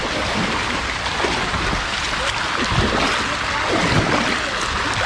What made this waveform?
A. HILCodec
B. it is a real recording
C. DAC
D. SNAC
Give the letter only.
B